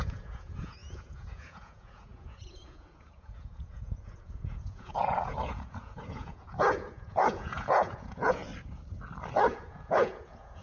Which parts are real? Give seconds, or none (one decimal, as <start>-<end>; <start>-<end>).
8.4-9.5